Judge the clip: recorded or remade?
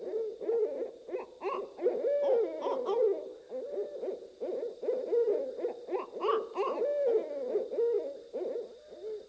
recorded